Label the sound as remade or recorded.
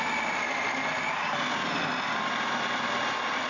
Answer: recorded